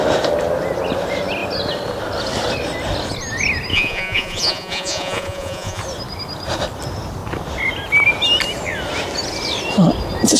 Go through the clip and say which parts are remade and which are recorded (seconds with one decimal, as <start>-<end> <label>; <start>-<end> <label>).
0.0-3.7 recorded; 3.7-5.8 remade; 5.8-10.4 recorded